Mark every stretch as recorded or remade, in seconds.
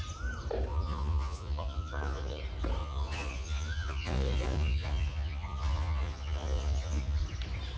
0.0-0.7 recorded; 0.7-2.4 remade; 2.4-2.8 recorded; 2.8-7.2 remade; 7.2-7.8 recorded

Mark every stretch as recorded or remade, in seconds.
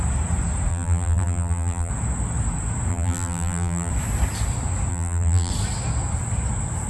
0.0-0.7 recorded; 0.7-1.9 remade; 1.9-2.9 recorded; 2.9-3.9 remade; 3.9-4.9 recorded; 4.9-5.5 remade; 5.5-6.9 recorded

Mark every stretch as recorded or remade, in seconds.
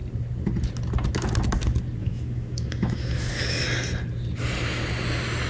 0.0-2.0 recorded; 2.0-3.3 remade; 3.3-5.5 recorded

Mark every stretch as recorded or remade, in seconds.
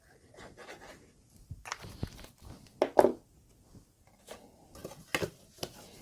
0.0-6.0 recorded